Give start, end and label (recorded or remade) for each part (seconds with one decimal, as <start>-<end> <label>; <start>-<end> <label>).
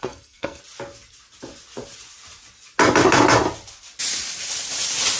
0.0-0.6 remade; 0.6-5.2 recorded